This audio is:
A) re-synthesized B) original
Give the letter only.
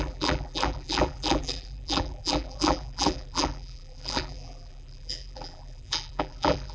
A